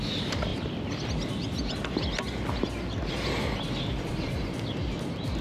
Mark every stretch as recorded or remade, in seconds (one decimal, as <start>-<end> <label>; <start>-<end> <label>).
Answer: 0.0-5.4 recorded